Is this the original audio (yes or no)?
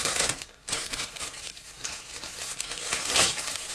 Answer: no